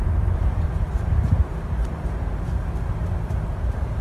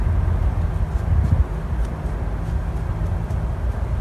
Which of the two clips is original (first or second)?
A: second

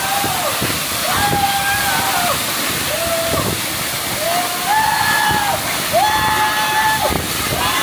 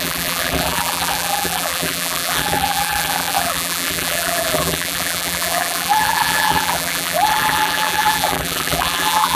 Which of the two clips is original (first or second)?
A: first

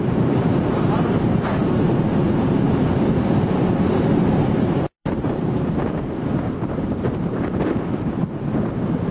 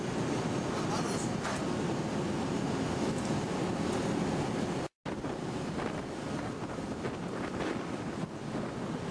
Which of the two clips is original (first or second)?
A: second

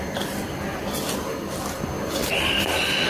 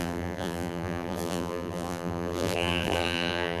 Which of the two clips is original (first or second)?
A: first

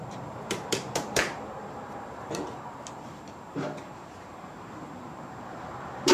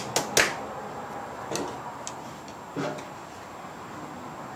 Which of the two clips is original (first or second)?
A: second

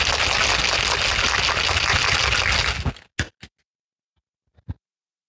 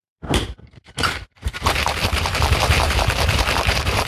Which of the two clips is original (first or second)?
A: first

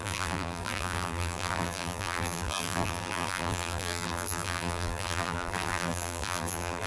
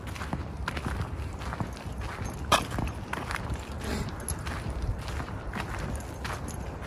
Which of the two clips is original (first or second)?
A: second